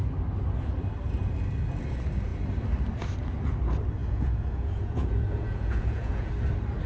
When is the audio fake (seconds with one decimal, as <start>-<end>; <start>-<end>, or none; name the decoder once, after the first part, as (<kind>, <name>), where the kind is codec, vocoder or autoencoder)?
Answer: 4.0-6.3 (vocoder, Vocos)

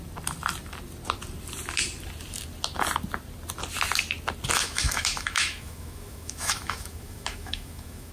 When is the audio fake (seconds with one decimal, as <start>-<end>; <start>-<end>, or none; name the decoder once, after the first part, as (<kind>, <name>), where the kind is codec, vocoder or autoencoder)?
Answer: 4.5-8.1 (autoencoder, DAC-VAE)

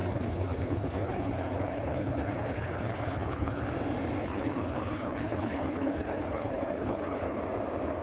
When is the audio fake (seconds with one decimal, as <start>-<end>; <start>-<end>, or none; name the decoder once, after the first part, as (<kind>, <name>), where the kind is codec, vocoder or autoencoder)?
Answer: 0.0-3.6 (codec, HILCodec); 4.2-7.4

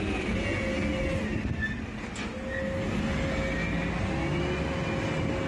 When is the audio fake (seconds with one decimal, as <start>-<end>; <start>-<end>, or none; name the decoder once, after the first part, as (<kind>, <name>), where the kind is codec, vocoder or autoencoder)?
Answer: none

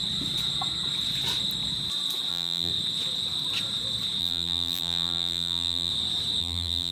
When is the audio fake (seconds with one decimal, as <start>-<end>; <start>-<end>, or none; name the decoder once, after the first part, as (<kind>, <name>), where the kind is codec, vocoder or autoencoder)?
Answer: 2.3-2.7 (vocoder, BigVGAN v2); 4.2-5.9; 6.4-6.9

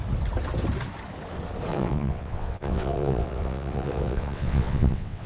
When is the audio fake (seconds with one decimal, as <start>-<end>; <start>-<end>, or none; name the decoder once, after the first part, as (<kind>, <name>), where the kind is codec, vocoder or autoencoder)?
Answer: 1.7-5.3 (vocoder, WaveNeXt)

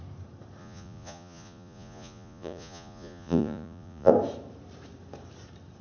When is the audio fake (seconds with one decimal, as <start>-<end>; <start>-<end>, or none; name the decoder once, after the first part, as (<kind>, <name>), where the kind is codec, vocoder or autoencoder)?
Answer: 0.6-4.1 (vocoder, Vocos)